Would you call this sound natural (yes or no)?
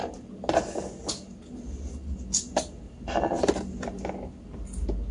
yes